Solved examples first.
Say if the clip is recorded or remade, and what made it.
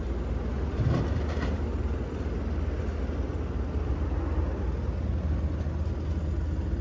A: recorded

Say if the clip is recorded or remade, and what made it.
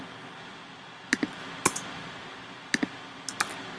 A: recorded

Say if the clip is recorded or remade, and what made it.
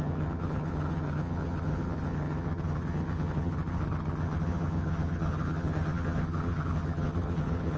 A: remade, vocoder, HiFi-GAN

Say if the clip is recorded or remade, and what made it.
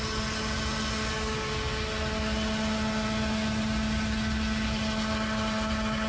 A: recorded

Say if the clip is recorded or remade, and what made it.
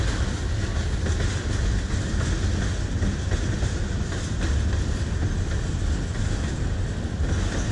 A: recorded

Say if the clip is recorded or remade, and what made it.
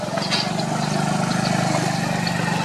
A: recorded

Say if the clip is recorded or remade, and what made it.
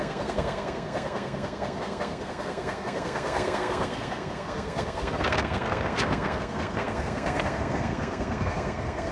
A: remade, codec, SNAC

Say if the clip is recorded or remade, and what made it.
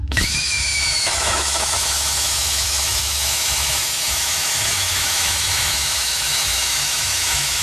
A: remade, autoencoder, DAC-VAE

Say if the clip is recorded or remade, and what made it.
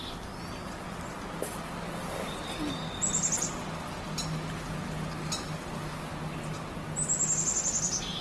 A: recorded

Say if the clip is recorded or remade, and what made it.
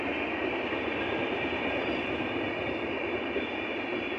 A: recorded